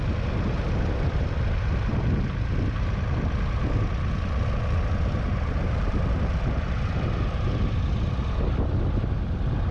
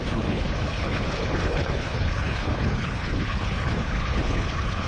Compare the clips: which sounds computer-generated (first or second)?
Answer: second